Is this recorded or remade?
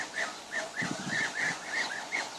remade